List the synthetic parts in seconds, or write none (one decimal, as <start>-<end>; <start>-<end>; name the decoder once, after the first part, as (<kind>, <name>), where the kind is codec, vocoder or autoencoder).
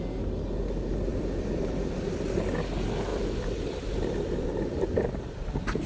1.1-2.1 (vocoder, BigVGAN v2); 3.1-5.1